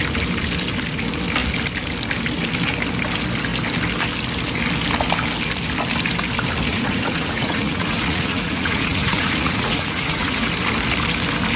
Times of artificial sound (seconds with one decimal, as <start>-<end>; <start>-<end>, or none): 6.7-10.5